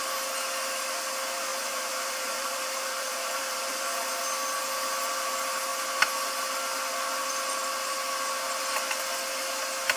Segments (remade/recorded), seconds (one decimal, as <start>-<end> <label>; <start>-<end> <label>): 0.0-1.5 recorded; 1.5-4.2 remade; 4.2-10.0 recorded